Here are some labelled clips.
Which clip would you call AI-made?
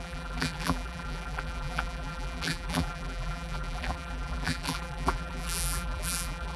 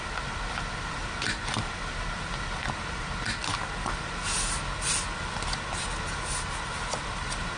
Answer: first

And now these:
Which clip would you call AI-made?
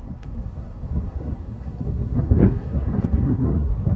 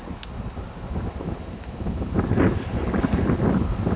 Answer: first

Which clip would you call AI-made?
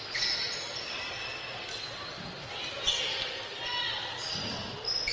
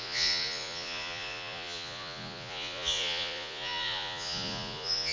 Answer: second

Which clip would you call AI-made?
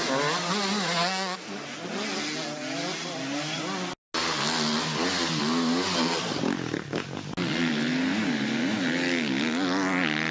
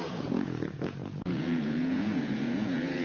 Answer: second